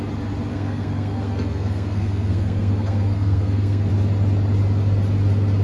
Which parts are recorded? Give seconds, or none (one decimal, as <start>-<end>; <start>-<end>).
0.0-0.5; 3.9-5.6